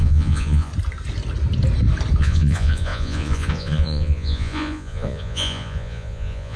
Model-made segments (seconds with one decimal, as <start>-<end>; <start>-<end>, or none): 0.0-0.7; 2.2-6.6